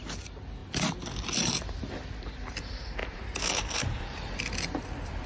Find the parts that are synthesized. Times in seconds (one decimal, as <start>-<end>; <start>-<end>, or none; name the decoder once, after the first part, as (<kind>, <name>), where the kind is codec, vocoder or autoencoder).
3.0-4.4 (vocoder, BigVGAN v2)